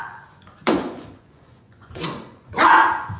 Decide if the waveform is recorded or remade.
remade